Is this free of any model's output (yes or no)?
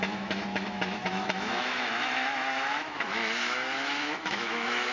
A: no